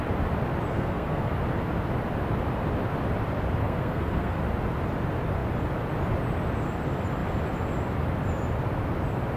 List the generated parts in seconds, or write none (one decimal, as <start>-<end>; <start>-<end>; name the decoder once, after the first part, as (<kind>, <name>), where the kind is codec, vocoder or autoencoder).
0.7-1.3 (codec, SNAC); 3.6-4.4

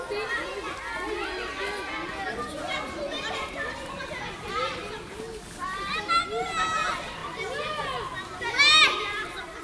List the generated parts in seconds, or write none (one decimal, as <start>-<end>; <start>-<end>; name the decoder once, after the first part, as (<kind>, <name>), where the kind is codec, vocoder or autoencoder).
none

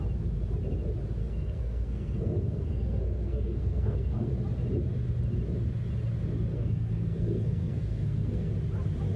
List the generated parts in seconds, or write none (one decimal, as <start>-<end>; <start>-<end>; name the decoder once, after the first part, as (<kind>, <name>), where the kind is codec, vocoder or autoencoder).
1.2-4.3 (codec, SNAC); 6.5-8.5

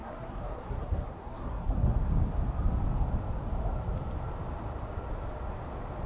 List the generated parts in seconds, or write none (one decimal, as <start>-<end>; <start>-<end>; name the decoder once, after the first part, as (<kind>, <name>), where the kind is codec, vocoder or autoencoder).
0.0-2.1 (codec, SNAC)

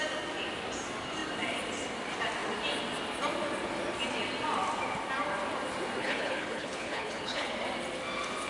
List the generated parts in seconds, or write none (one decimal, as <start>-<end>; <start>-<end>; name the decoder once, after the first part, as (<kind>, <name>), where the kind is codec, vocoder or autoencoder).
6.0-7.5 (codec, HILCodec)

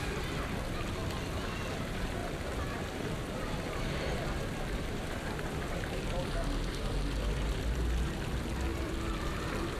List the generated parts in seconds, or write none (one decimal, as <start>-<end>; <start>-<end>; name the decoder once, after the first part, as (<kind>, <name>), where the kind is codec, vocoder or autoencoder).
1.0-1.8 (vocoder, BigVGAN v2); 2.2-6.3; 8.7-9.4

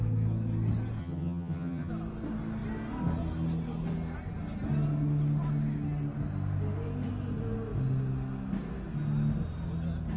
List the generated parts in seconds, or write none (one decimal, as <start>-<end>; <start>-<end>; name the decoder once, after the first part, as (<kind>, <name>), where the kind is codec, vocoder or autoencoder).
1.0-1.9 (vocoder, HiFi-GAN)